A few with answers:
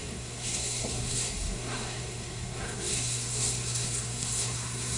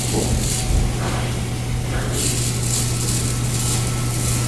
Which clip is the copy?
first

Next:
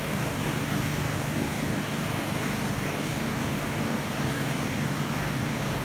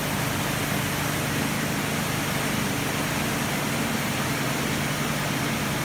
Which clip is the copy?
first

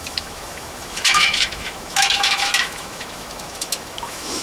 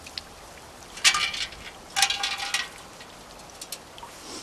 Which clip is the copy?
first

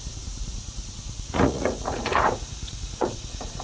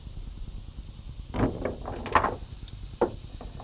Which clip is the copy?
first